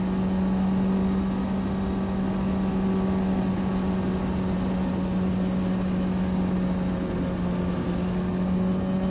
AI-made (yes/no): no